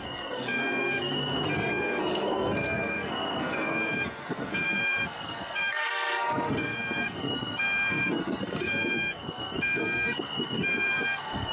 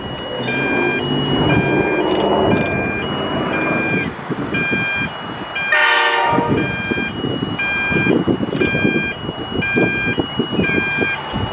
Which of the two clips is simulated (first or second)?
first